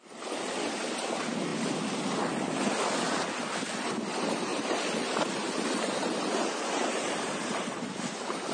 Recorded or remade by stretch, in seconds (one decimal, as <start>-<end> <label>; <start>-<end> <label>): 0.0-4.5 recorded; 4.5-7.6 remade; 7.6-8.5 recorded